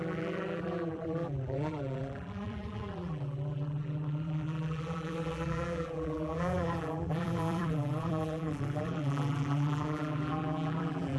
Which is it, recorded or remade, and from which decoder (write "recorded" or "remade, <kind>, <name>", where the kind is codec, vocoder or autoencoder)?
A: remade, vocoder, BigVGAN v2